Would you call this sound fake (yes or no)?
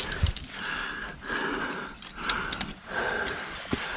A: no